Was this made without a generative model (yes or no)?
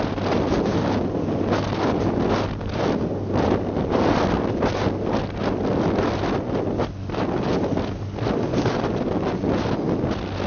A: yes